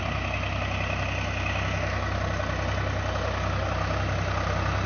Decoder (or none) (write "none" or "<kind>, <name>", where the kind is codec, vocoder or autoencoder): none